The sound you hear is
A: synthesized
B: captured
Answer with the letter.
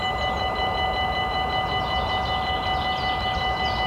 B